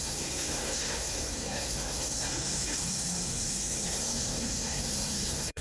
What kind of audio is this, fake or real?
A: fake